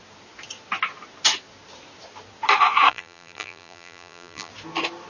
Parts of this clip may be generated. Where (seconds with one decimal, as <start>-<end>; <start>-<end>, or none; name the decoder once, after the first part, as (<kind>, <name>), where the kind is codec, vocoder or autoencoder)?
2.9-4.5 (vocoder, BigVGAN v2)